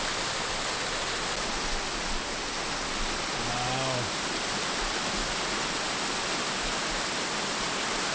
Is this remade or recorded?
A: recorded